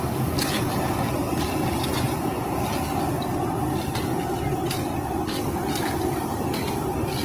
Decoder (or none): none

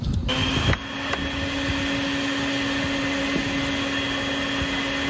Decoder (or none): none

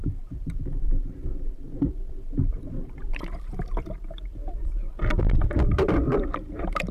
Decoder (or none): vocoder, BigVGAN v2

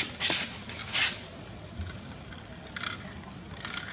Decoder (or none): none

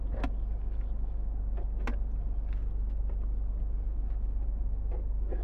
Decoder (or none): none